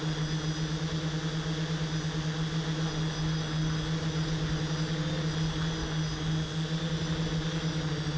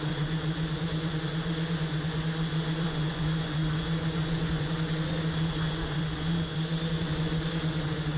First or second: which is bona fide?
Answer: first